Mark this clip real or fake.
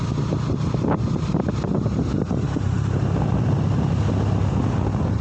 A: real